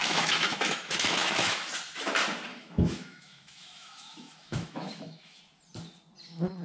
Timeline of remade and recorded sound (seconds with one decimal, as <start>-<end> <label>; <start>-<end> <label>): 0.0-1.7 remade; 1.7-2.5 recorded; 2.5-5.4 remade; 5.4-6.6 recorded